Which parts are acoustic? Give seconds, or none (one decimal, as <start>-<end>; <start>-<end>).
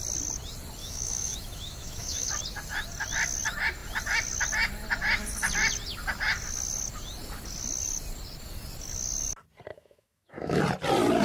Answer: 0.0-0.8; 2.3-9.7; 10.6-11.2